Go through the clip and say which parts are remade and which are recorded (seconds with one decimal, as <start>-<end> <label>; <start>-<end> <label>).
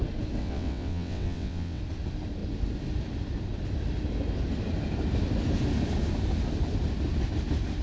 0.0-0.4 recorded; 0.4-1.8 remade; 1.8-7.8 recorded